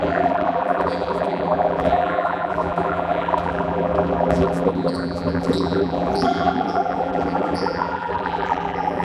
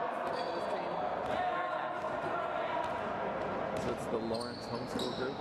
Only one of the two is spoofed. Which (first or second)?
first